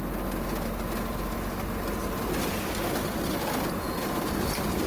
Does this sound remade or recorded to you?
recorded